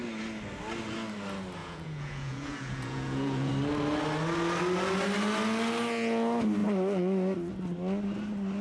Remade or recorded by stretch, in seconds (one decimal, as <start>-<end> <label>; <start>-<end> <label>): 0.0-1.6 recorded; 1.6-3.5 remade; 3.5-8.6 recorded